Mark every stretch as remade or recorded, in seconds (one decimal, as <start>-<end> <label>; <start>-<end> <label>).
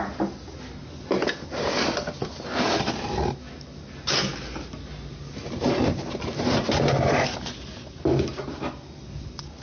0.0-9.6 recorded